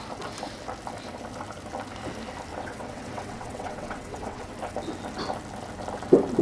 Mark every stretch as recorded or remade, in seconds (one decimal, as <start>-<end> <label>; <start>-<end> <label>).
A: 0.0-2.5 recorded; 2.5-4.5 remade; 4.5-6.4 recorded